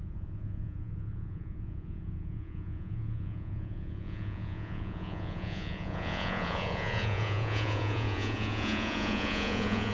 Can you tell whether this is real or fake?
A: fake